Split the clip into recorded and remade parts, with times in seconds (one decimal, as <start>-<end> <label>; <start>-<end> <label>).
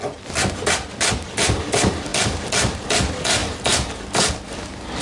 0.0-5.0 recorded